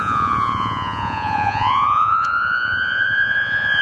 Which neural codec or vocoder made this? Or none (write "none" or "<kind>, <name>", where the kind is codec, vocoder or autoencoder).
vocoder, Vocos